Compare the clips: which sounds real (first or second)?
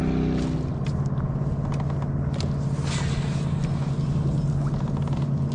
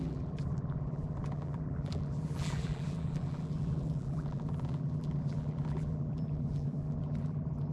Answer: first